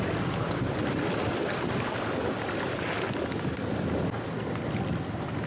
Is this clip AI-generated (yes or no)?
no